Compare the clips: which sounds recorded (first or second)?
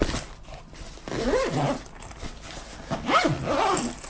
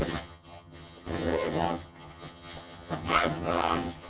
first